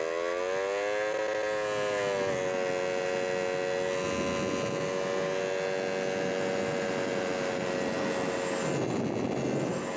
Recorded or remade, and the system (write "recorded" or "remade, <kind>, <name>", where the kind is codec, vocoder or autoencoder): recorded